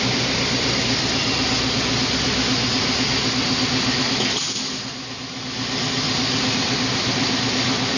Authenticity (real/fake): real